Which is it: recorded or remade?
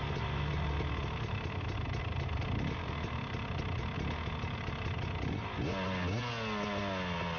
recorded